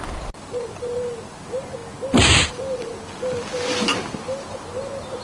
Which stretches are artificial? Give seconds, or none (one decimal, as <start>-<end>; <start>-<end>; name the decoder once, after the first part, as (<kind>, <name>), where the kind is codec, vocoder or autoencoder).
none